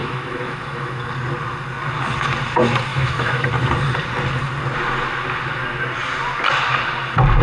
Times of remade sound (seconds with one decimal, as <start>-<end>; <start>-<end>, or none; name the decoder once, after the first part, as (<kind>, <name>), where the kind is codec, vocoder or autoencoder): 0.0-1.1 (autoencoder, DAC-VAE); 2.9-3.5